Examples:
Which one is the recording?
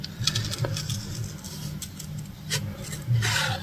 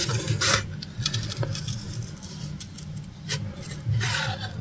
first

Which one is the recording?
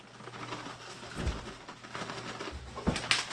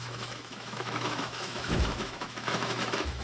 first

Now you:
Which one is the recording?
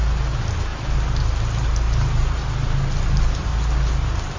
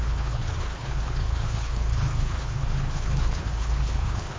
first